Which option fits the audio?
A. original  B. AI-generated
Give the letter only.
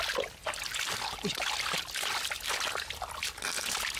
A